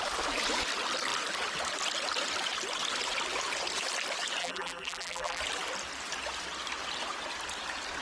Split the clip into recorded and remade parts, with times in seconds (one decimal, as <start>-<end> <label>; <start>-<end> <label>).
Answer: 0.0-4.4 recorded; 4.4-5.4 remade; 5.4-8.0 recorded